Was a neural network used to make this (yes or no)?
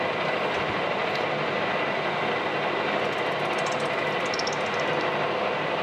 no